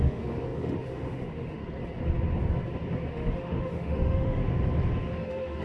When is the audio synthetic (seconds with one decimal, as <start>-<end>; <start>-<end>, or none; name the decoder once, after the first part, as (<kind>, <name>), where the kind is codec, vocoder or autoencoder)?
0.0-1.6 (autoencoder, DAC-VAE); 3.1-4.4; 5.1-5.6